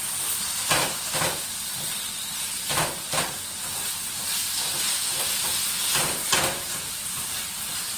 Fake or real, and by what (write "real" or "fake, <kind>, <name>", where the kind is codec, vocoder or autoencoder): fake, vocoder, BigVGAN v2